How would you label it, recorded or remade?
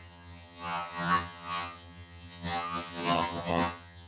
remade